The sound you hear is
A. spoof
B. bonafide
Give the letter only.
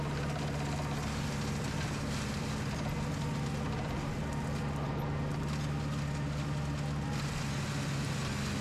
B